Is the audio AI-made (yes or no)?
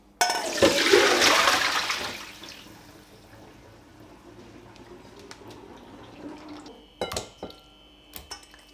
no